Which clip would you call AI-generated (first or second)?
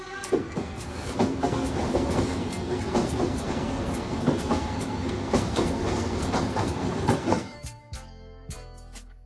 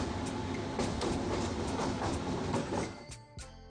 first